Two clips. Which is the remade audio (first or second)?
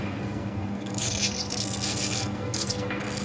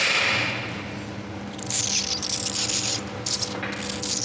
first